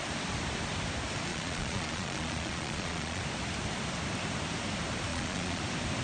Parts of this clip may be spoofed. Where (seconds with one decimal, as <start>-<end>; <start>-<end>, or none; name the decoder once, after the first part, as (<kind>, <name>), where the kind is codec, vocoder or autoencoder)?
1.3-3.2 (vocoder, Vocos); 5.1-5.6